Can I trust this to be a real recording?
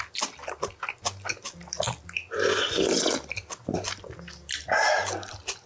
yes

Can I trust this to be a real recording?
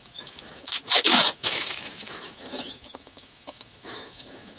no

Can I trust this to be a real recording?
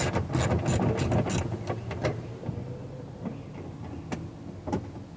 yes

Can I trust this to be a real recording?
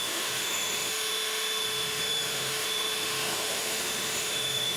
no